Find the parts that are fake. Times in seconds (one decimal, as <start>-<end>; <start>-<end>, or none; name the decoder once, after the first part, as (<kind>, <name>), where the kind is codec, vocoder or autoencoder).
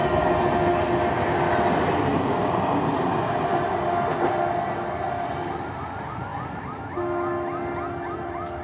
none